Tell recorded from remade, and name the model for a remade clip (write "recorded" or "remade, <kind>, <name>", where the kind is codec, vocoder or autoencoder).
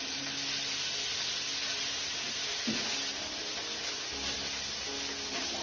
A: recorded